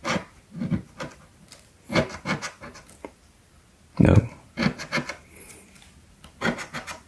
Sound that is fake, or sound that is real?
real